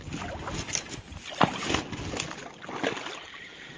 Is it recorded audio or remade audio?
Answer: recorded